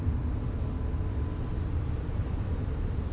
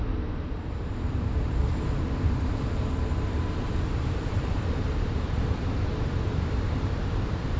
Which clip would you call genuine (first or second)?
first